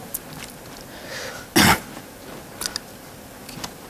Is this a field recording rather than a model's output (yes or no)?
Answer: yes